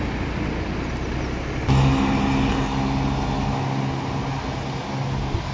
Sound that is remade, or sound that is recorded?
recorded